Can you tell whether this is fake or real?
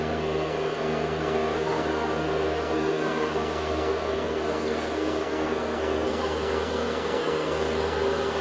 fake